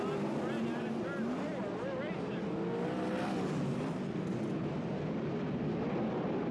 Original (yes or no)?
yes